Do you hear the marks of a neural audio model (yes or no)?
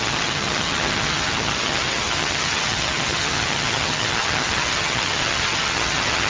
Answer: yes